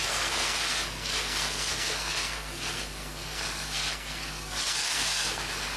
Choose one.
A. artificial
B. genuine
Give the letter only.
A